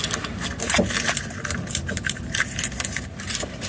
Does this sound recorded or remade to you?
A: recorded